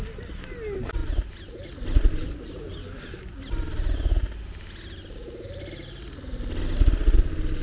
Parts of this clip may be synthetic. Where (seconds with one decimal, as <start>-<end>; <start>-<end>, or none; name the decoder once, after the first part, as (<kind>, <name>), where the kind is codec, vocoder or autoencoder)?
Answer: none